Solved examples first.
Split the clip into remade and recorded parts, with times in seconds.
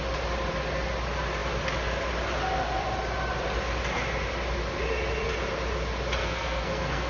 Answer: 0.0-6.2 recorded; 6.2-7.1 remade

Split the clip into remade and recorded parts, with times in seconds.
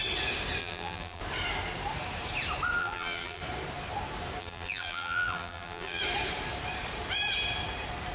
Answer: 0.0-0.6 recorded; 0.6-1.2 remade; 1.2-2.8 recorded; 2.8-3.4 remade; 3.4-4.4 recorded; 4.4-6.0 remade; 6.0-8.1 recorded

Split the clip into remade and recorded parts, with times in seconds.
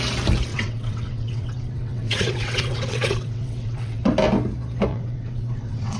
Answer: 0.0-0.5 recorded; 0.5-4.1 remade; 4.1-4.9 recorded; 4.9-6.0 remade